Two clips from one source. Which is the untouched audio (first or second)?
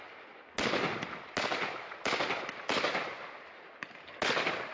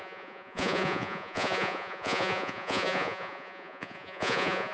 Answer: first